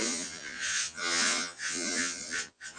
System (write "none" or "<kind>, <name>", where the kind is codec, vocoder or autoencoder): vocoder, Vocos